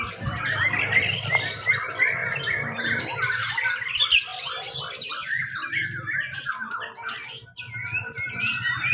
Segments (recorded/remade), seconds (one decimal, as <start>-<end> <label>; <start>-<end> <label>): 0.0-5.8 remade; 5.8-8.0 recorded; 8.0-8.9 remade